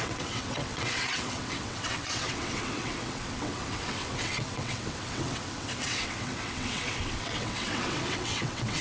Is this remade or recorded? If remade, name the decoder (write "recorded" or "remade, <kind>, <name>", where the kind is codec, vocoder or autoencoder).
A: remade, vocoder, WaveNeXt